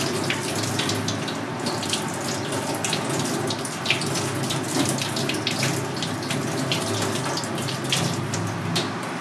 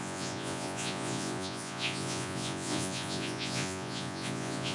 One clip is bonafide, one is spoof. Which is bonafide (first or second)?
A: first